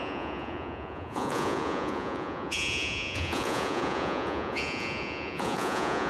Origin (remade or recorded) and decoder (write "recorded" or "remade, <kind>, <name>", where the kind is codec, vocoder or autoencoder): remade, vocoder, Vocos